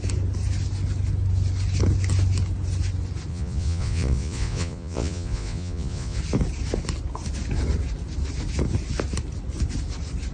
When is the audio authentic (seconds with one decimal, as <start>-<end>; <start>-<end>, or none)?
0.0-3.3; 6.2-10.3

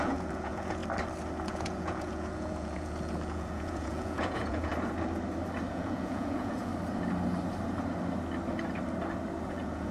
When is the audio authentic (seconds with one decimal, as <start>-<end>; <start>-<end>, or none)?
0.8-1.4; 4.7-5.7; 6.7-9.5

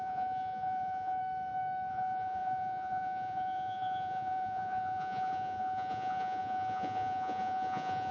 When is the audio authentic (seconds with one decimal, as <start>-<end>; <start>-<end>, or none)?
1.2-1.9

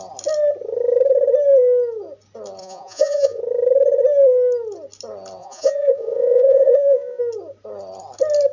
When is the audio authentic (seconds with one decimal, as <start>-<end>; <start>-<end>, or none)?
0.0-2.6; 3.4-5.4; 7.2-8.5

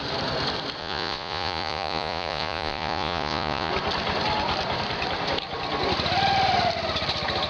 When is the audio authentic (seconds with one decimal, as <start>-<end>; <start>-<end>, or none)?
0.0-0.8; 3.7-7.5

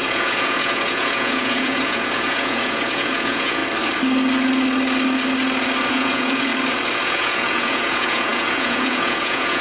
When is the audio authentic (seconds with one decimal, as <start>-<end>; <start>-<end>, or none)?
3.6-5.9; 6.5-7.0